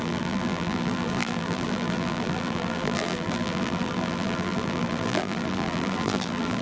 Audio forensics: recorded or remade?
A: remade